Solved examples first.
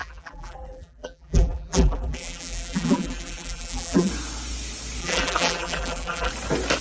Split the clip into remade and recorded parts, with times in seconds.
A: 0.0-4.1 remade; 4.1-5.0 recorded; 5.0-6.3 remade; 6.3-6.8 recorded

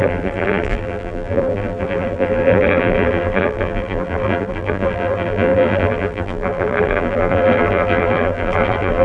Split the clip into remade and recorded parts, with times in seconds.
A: 0.0-9.0 remade

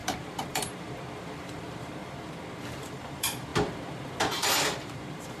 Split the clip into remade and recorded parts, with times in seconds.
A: 0.0-2.0 remade; 2.0-2.7 recorded; 2.7-5.4 remade

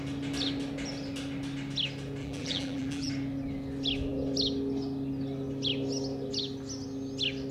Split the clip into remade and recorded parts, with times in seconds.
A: 0.0-2.2 recorded; 2.2-3.1 remade; 3.1-7.5 recorded

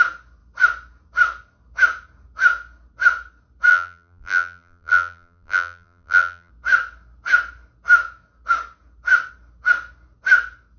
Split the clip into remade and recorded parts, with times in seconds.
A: 0.0-3.7 recorded; 3.7-6.5 remade; 6.5-10.8 recorded